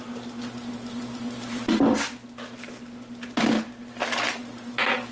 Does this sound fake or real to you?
real